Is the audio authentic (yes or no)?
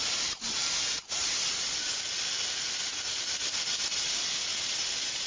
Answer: yes